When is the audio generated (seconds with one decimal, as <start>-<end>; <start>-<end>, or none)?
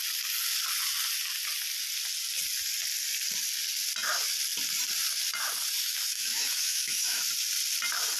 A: 5.8-7.2